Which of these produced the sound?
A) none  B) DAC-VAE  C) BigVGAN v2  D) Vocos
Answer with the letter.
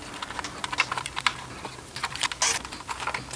A